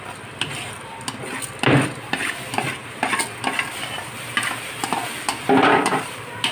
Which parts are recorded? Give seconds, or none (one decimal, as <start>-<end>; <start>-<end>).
0.0-2.8